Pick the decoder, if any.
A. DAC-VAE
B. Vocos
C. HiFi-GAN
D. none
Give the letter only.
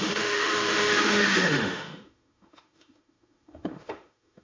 A